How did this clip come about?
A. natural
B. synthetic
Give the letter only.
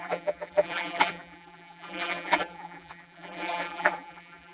B